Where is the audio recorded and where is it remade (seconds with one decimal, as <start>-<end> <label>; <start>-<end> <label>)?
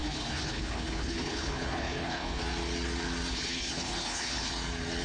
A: 0.0-2.4 remade; 2.4-3.3 recorded; 3.3-4.5 remade; 4.5-5.0 recorded